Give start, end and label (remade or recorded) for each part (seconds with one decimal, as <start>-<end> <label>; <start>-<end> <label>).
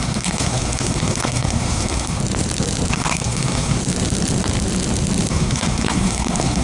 0.0-2.2 remade; 2.2-2.9 recorded; 2.9-3.8 remade; 3.8-5.3 recorded; 5.3-6.6 remade